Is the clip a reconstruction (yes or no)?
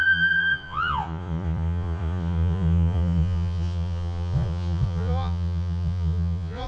yes